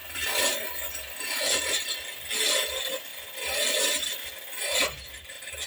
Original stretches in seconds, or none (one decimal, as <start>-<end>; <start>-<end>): 0.0-5.7